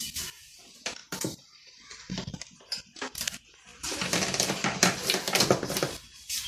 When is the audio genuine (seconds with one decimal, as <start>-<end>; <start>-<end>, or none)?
0.0-1.0; 2.4-3.7; 5.0-6.5